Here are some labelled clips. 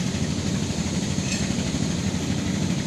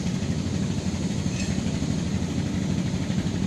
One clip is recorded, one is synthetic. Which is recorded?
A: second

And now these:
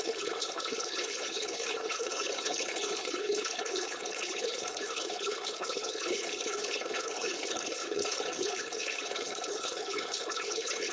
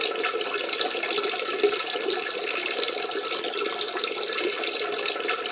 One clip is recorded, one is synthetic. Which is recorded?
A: second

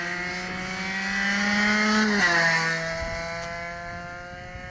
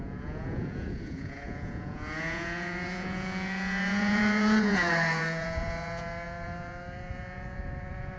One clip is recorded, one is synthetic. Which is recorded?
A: first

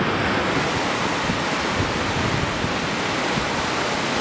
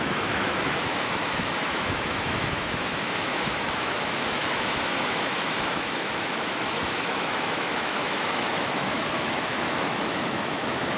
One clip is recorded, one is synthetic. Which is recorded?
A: first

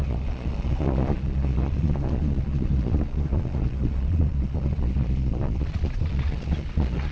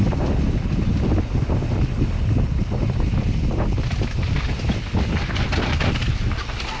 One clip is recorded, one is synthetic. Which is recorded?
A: second